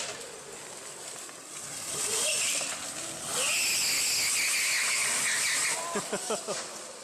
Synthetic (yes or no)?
no